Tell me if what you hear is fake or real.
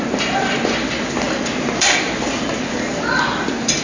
real